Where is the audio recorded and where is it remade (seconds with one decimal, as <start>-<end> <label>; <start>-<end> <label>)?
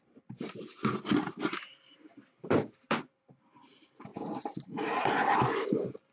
0.0-0.8 remade; 0.8-1.3 recorded; 1.3-6.1 remade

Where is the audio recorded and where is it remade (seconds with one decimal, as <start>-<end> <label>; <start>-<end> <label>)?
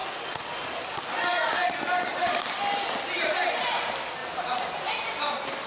0.0-0.8 remade; 0.8-5.7 recorded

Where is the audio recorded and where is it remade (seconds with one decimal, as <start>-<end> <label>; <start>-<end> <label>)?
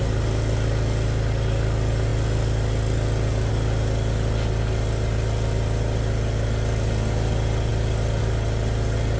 0.0-9.2 recorded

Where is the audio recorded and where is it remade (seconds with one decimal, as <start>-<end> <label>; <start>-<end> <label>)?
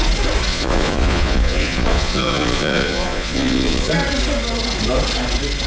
0.0-0.5 recorded; 0.5-3.9 remade; 3.9-5.7 recorded